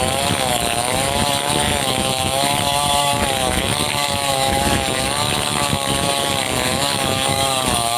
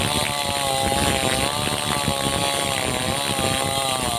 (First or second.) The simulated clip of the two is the first